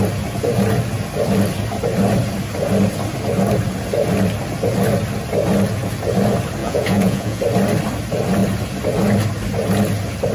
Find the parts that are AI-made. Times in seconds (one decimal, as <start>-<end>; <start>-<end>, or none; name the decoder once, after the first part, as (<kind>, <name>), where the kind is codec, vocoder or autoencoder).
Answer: 6.6-7.4 (vocoder, Vocos)